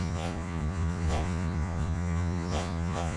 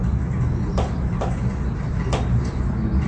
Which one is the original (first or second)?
second